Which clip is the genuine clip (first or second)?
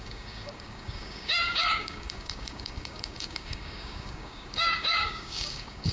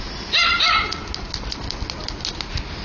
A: second